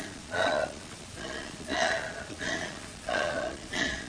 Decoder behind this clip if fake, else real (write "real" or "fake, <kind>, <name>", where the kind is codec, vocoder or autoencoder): fake, vocoder, Vocos